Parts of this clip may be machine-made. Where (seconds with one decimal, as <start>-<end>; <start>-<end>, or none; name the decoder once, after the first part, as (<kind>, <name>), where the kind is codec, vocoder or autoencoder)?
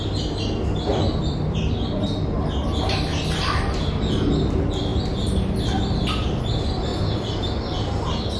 0.9-1.6 (vocoder, BigVGAN v2); 3.1-4.3; 6.9-7.5